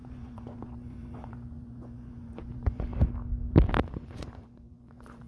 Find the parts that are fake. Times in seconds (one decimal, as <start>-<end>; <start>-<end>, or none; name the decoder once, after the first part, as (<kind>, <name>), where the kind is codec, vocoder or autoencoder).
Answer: 0.0-2.9 (vocoder, Vocos); 3.9-5.3